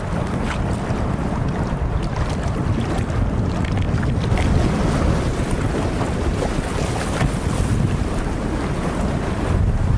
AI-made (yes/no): no